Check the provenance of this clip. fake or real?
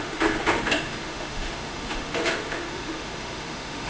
fake